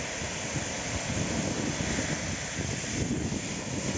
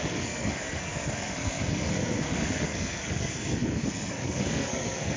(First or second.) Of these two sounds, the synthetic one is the second